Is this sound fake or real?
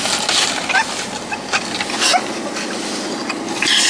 real